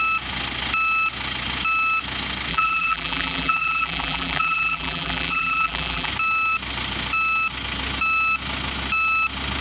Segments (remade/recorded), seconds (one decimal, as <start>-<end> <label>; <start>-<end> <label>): 0.0-2.5 recorded; 2.5-6.1 remade; 6.1-9.6 recorded